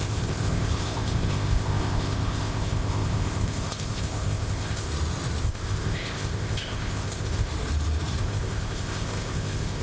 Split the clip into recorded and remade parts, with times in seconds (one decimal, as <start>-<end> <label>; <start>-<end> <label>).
0.0-4.9 remade; 4.9-5.4 recorded; 5.4-7.5 remade; 7.5-8.2 recorded; 8.2-9.8 remade